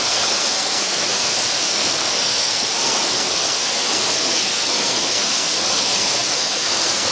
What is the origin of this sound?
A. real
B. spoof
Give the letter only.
B